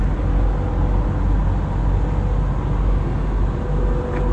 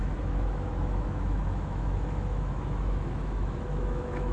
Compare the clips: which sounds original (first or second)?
first